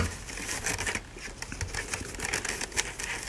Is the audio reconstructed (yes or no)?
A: no